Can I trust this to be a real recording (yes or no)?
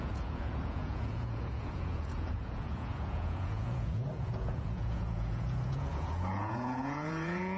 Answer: no